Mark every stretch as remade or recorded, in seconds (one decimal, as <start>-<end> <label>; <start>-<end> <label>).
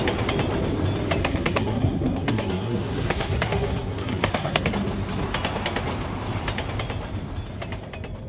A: 0.0-1.2 recorded; 1.2-4.7 remade; 4.7-8.3 recorded